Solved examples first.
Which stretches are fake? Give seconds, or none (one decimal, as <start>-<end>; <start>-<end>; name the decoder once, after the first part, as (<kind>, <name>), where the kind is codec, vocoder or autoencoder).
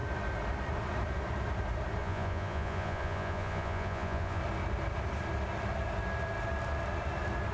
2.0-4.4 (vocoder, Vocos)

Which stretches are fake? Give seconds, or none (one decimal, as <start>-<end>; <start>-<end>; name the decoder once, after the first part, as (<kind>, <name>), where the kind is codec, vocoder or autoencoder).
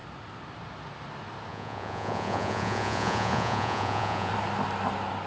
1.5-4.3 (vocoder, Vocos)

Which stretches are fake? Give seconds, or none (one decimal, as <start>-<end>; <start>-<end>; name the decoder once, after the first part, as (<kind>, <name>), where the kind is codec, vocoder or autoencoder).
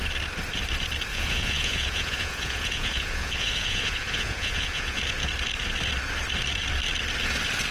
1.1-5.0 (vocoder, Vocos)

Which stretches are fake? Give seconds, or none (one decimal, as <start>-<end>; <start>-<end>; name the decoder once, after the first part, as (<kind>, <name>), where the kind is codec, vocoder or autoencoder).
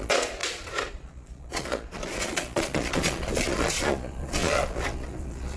0.0-5.6 (vocoder, Vocos)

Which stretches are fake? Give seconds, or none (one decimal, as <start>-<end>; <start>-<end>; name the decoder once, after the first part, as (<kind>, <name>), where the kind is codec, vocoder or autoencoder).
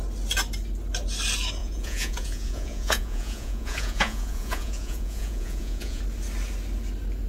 1.6-6.0 (vocoder, Vocos)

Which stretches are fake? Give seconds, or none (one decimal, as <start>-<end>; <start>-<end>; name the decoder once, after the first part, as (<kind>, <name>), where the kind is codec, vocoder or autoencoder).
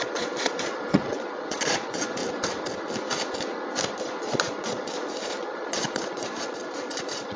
0.0-2.2 (vocoder, Vocos); 4.0-7.4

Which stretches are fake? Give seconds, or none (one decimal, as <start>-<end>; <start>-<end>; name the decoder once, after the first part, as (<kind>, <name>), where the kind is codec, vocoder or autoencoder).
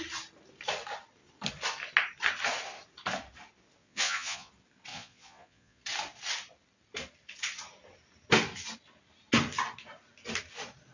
3.8-4.5 (vocoder, Vocos); 4.9-5.8